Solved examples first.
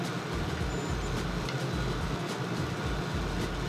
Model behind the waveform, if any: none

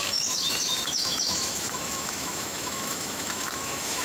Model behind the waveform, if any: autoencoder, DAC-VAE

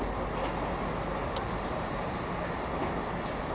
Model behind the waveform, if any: none